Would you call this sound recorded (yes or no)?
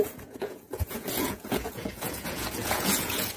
no